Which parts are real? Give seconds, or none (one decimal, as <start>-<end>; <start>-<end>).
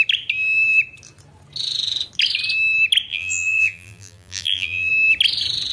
0.0-3.1; 4.9-5.7